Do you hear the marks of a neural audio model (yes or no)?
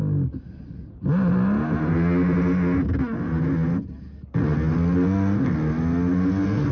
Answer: no